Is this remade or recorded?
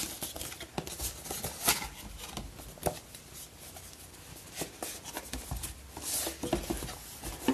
recorded